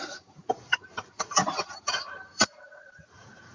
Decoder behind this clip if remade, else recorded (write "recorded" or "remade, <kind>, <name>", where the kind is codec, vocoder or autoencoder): remade, vocoder, BigVGAN v2